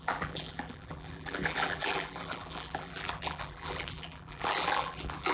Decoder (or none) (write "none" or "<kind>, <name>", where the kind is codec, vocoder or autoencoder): vocoder, BigVGAN v2